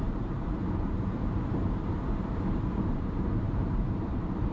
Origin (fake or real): fake